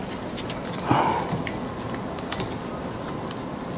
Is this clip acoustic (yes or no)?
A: yes